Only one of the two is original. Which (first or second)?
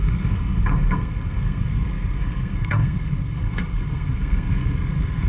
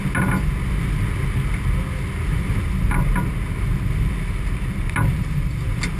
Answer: second